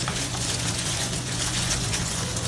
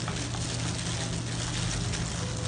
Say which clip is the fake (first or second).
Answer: first